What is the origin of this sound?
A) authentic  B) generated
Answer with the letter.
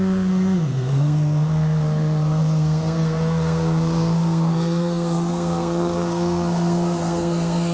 B